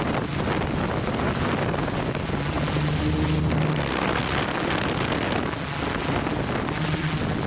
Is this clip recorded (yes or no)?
yes